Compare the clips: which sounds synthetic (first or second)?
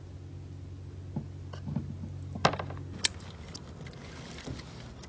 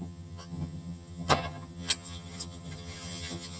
second